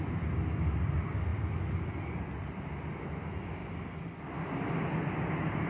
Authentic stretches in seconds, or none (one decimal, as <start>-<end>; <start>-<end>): 0.0-5.7